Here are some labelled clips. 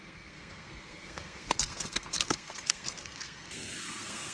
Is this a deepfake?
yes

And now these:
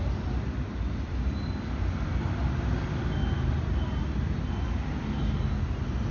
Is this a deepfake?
no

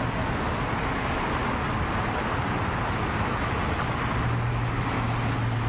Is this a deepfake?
no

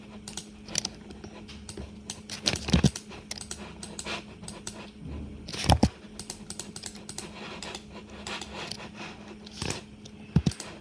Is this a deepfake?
no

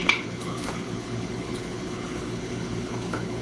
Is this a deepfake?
yes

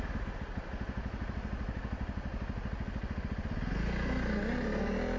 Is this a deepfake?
no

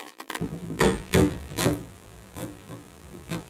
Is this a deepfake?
yes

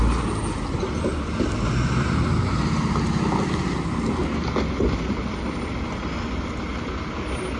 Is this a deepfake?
no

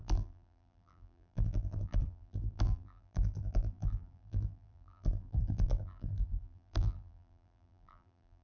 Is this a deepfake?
yes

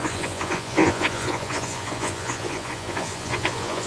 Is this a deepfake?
yes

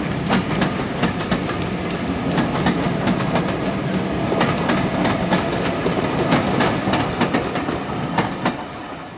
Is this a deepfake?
no